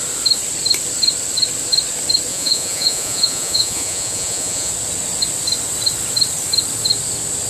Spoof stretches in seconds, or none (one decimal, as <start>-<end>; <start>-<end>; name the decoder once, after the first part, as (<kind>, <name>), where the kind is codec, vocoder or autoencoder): 2.3-4.7 (vocoder, Vocos)